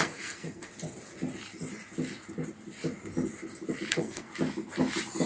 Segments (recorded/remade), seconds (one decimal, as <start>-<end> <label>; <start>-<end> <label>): 0.0-0.7 remade; 0.7-3.9 recorded; 3.9-4.3 remade; 4.3-5.3 recorded